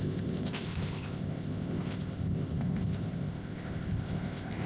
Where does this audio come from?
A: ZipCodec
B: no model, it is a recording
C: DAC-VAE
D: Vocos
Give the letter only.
A